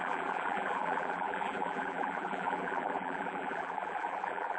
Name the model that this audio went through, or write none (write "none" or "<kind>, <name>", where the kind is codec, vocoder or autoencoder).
vocoder, BigVGAN v2